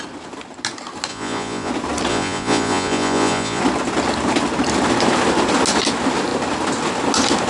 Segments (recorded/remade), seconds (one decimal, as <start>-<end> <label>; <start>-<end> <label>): 0.0-1.1 recorded; 1.1-1.7 remade; 1.7-2.1 recorded; 2.1-3.6 remade; 3.6-7.5 recorded

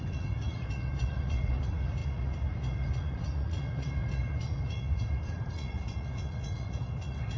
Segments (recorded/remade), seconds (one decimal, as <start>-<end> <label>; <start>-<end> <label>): 0.0-7.4 remade